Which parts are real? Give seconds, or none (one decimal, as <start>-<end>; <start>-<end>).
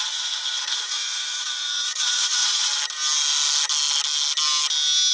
2.7-5.1